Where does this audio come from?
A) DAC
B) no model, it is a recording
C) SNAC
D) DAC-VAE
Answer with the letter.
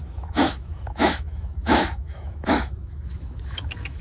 D